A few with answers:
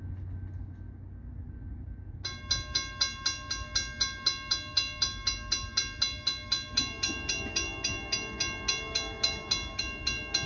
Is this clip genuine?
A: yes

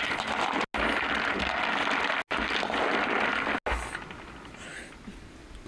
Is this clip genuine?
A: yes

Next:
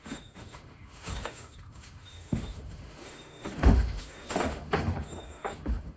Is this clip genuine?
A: no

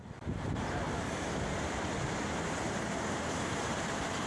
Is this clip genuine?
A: no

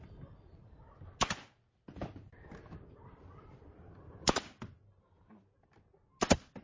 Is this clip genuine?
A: yes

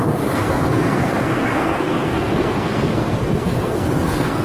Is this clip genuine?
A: no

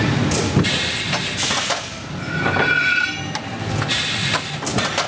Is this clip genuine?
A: yes